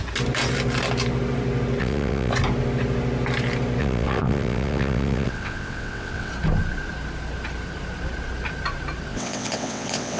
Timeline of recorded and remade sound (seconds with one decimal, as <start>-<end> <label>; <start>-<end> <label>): 0.0-1.8 recorded; 1.8-2.3 remade; 2.3-3.8 recorded; 3.8-6.3 remade; 6.3-9.1 recorded; 9.1-10.2 remade